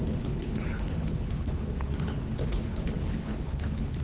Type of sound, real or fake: fake